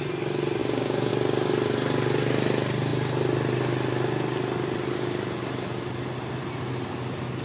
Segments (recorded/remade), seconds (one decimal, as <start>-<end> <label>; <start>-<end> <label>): 0.0-0.6 recorded; 0.6-1.1 remade; 1.1-7.4 recorded